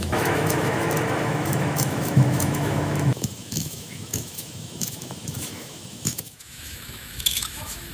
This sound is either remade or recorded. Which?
remade